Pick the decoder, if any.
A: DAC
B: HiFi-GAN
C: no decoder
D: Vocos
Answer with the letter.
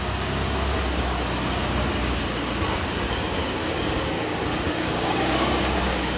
A